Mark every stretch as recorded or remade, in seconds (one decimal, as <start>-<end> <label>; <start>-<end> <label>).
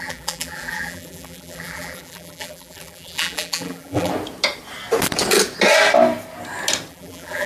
0.0-4.1 remade; 4.1-6.9 recorded; 6.9-7.5 remade